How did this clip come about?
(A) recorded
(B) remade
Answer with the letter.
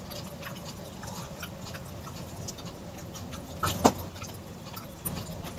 A